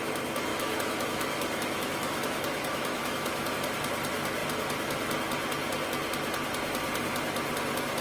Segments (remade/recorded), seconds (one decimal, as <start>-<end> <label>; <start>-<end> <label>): 0.0-0.5 recorded; 0.5-3.5 remade; 3.5-8.0 recorded